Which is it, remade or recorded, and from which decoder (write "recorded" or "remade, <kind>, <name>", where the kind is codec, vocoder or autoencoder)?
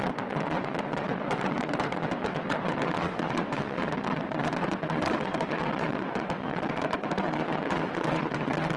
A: remade, vocoder, WaveNeXt